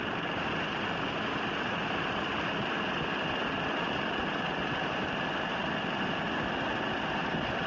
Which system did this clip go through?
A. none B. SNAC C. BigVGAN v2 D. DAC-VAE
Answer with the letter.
A